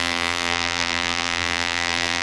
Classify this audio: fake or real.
fake